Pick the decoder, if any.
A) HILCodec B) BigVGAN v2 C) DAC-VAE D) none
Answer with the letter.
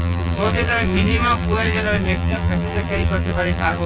B